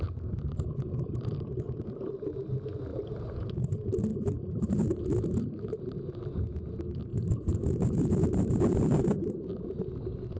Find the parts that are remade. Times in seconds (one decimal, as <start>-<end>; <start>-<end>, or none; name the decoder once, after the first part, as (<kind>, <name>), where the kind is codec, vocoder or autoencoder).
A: 2.9-3.5 (vocoder, BigVGAN v2); 4.1-5.0; 7.1-9.3